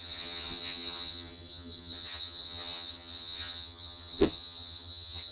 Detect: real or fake fake